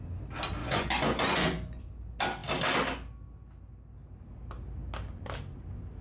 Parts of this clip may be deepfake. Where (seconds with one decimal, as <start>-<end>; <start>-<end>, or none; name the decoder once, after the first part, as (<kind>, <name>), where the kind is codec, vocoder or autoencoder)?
0.6-1.8 (vocoder, Vocos)